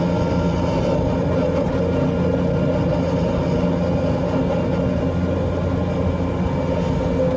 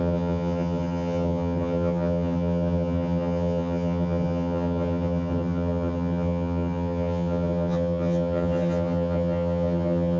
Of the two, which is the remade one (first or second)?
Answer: second